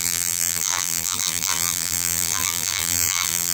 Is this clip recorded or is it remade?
remade